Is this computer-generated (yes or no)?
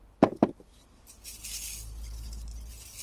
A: no